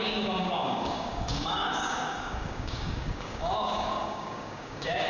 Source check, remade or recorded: remade